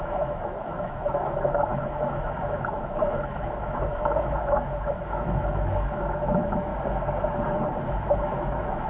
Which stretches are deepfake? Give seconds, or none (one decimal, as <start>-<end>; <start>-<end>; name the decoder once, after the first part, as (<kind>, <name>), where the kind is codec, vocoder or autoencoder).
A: 0.0-6.7 (autoencoder, DAC-VAE); 7.8-8.9